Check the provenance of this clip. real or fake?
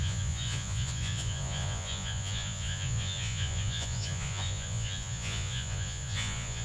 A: fake